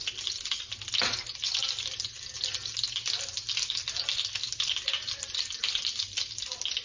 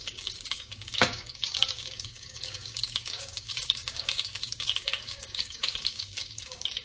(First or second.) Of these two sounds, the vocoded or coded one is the second